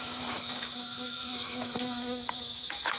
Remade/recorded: remade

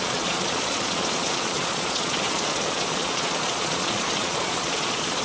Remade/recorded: remade